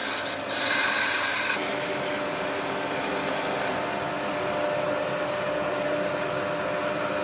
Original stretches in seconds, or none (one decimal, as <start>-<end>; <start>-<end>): 0.0-7.2

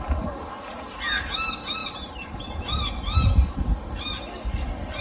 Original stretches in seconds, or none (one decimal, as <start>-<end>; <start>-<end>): 0.0-5.0

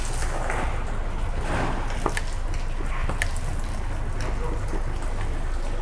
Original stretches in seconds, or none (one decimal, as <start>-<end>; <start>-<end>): 0.0-3.0; 3.7-5.8